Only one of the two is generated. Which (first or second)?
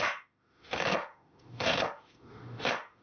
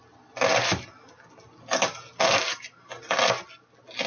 first